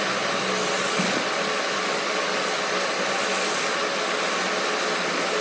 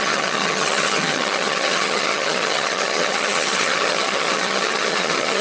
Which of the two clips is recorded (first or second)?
first